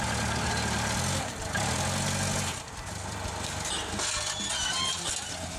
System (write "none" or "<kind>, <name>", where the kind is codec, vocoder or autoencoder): none